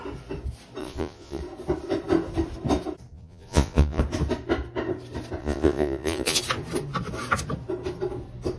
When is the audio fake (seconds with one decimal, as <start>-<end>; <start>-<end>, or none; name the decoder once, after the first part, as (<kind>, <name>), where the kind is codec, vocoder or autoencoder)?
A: 0.8-1.4 (vocoder, Vocos); 3.1-4.0; 5.4-6.4